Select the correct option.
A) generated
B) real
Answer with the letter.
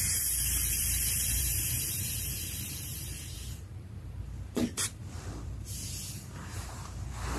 A